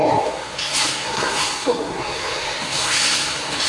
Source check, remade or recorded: remade